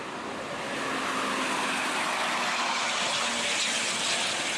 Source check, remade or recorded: recorded